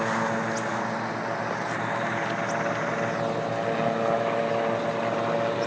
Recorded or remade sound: recorded